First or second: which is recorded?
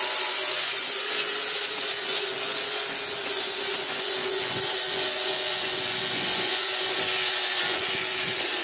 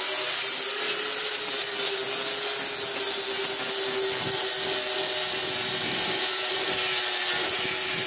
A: second